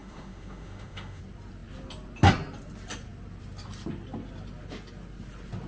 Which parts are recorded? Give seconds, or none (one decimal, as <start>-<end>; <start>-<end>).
1.2-5.7